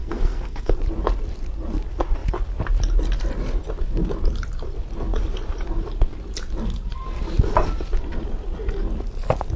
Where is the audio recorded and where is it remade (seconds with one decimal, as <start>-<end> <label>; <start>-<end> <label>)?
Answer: 0.0-0.7 remade; 0.7-9.6 recorded